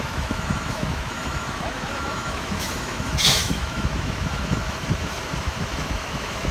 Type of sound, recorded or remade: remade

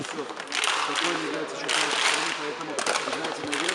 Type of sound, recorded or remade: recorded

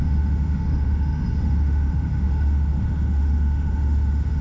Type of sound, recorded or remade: remade